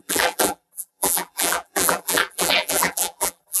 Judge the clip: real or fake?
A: fake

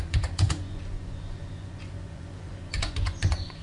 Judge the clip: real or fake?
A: fake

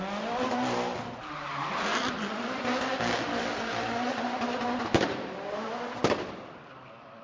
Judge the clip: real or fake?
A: real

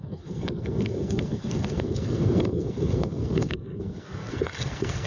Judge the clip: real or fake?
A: fake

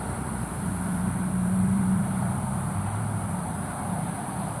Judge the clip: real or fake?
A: fake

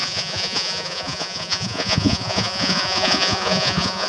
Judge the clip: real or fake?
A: fake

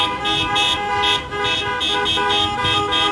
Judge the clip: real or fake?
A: real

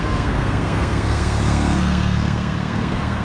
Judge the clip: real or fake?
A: fake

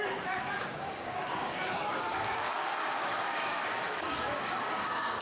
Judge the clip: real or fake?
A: fake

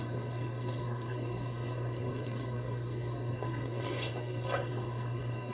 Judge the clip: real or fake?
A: fake